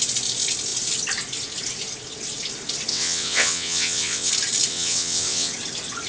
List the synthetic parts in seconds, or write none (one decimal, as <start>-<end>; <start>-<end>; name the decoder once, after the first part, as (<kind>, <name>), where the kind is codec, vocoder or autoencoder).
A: 2.9-4.3 (vocoder, WaveNeXt); 4.7-5.5